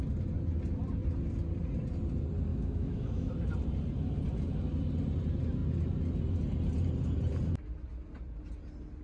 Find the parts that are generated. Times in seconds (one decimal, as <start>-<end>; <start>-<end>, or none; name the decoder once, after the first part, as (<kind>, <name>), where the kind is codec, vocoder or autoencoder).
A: 2.5-3.3 (autoencoder, DAC-VAE)